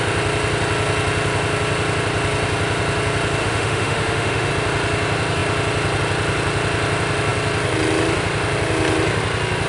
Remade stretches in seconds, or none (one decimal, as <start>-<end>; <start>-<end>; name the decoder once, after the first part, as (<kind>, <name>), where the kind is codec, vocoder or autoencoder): 3.4-4.5 (autoencoder, DAC-VAE)